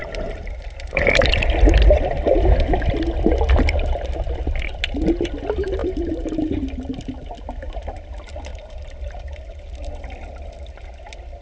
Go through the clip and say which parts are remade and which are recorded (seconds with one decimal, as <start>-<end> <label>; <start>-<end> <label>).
0.0-1.3 remade; 1.3-5.8 recorded; 5.8-6.4 remade; 6.4-8.5 recorded; 8.5-9.6 remade; 9.6-11.4 recorded

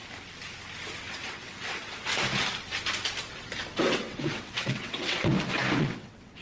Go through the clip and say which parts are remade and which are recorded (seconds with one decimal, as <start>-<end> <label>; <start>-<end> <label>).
0.0-1.0 recorded; 1.0-2.1 remade; 2.1-3.8 recorded; 3.8-5.3 remade; 5.3-5.8 recorded; 5.8-6.4 remade

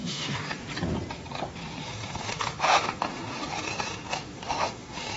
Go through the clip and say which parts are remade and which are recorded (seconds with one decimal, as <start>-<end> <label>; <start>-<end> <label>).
0.0-0.6 remade; 0.6-1.8 recorded; 1.8-5.2 remade